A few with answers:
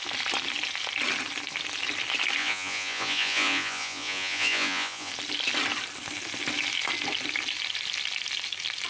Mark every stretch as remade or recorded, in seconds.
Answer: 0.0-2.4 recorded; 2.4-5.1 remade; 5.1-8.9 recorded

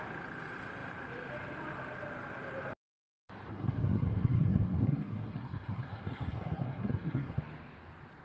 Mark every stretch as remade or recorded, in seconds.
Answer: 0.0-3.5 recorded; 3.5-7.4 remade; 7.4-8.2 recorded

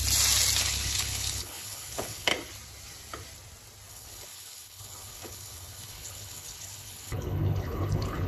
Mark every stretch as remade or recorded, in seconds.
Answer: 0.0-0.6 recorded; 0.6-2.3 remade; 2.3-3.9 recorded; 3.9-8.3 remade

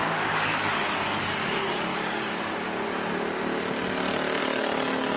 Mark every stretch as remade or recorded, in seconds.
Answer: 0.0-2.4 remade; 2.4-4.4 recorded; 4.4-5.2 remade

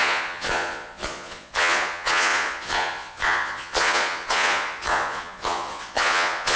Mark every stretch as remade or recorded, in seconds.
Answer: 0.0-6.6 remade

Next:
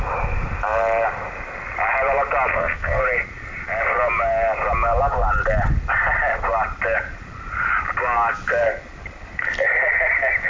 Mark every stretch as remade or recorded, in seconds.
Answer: 0.0-2.5 recorded; 2.5-3.0 remade; 3.0-10.5 recorded